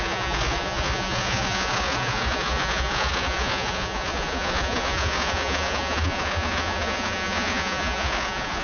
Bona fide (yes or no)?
no